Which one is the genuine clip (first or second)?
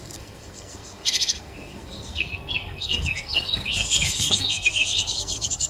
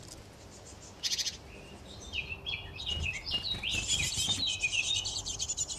second